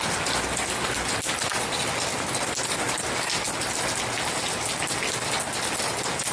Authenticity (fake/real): real